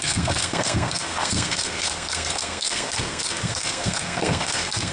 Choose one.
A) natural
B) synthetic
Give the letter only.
B